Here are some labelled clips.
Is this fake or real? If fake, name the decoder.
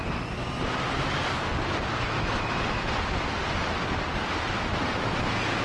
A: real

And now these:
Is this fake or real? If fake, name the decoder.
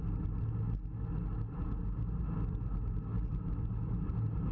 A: real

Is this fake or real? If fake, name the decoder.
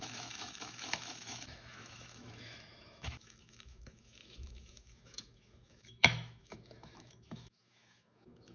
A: fake, autoencoder, DAC-VAE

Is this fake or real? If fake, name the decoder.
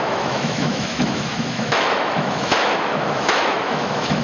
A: fake, autoencoder, DAC-VAE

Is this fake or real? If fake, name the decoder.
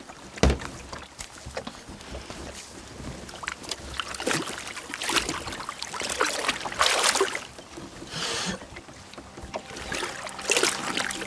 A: real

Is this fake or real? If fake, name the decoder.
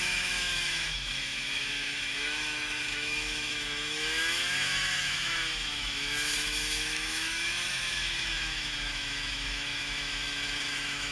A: fake, autoencoder, DAC-VAE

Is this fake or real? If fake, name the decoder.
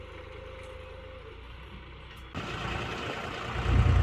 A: real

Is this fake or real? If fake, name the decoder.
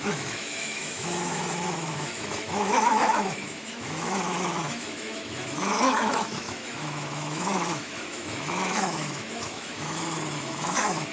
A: fake, autoencoder, DAC-VAE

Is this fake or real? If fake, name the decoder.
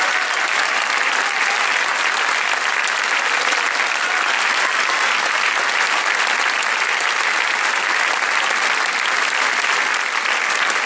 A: real